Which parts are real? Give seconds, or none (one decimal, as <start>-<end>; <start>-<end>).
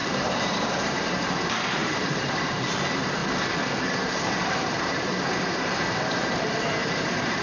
3.2-3.8